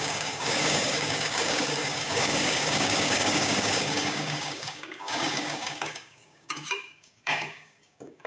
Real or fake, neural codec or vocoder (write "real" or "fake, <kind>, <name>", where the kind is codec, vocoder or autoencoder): fake, codec, DAC